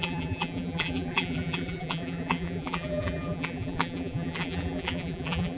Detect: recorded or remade remade